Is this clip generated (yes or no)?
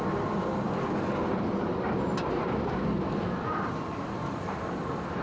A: no